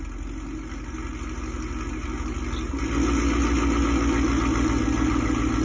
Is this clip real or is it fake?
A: real